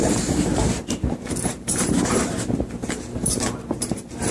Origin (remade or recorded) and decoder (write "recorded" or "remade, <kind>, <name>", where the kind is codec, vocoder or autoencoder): remade, vocoder, BigVGAN v2